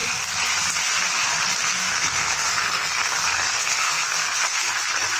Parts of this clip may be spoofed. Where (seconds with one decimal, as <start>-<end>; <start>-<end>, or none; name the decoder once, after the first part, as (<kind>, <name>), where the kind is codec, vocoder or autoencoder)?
1.7-4.8 (codec, SNAC)